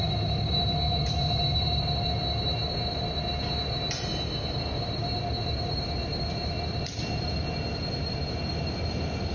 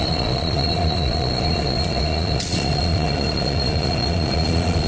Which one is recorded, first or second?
first